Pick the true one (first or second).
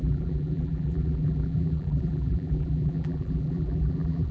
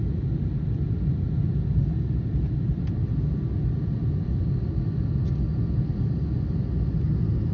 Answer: second